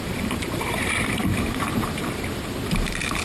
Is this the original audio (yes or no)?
no